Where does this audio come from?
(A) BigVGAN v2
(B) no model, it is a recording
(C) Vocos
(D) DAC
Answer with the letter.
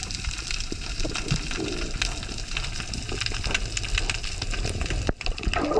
B